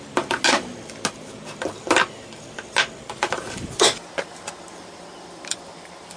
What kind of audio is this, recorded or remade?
recorded